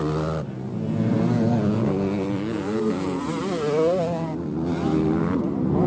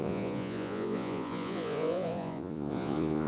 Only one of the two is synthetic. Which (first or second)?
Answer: second